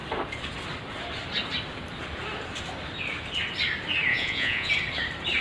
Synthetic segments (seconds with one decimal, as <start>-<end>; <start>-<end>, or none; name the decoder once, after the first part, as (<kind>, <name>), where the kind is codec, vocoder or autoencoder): 4.1-4.7 (vocoder, Vocos)

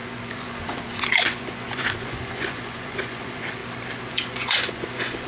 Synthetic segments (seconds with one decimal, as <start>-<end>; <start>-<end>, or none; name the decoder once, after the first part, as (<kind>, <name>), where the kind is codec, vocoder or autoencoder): 0.0-3.6 (vocoder, Vocos); 4.1-5.3

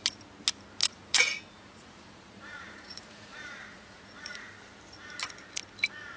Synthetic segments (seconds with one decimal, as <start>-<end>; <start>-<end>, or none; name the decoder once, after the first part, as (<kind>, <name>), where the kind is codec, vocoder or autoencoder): 0.8-4.5 (vocoder, Vocos)